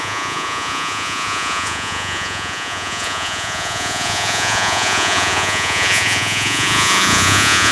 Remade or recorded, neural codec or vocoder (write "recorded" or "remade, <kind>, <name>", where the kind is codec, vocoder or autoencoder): remade, vocoder, Vocos